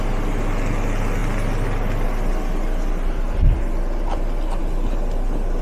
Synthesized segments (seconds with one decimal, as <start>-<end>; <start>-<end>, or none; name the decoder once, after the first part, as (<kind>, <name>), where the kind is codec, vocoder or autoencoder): none